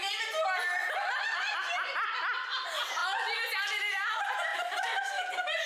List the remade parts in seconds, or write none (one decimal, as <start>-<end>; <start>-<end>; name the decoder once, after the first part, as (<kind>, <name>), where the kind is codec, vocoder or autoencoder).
0.8-1.5 (vocoder, BigVGAN v2); 4.5-5.7